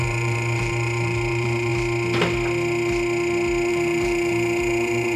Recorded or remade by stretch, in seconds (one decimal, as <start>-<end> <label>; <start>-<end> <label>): 0.0-1.7 remade; 1.7-3.7 recorded; 3.7-5.2 remade